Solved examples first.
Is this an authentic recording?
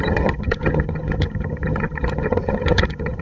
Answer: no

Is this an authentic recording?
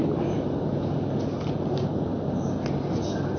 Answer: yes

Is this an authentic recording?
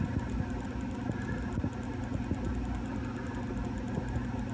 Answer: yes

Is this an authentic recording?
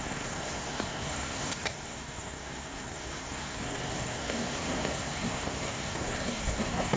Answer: no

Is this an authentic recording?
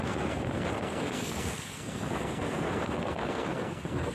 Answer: no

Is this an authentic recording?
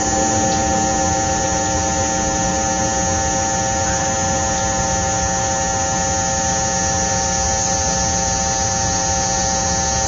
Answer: yes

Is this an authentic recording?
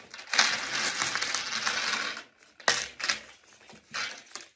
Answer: yes